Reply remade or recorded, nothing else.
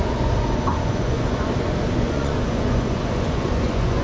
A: remade